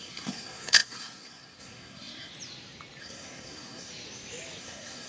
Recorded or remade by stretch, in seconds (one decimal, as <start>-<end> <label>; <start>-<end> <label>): 0.0-2.3 remade; 2.3-3.0 recorded; 3.0-3.9 remade; 3.9-4.6 recorded; 4.6-5.1 remade